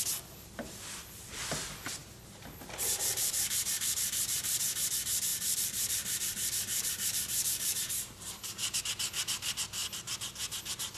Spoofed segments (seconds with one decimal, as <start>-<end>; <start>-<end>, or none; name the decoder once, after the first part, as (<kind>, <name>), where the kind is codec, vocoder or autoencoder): 2.0-2.5 (vocoder, BigVGAN v2); 2.9-4.6; 5.3-8.8